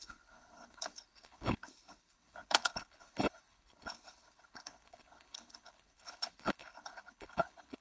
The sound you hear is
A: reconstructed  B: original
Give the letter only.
A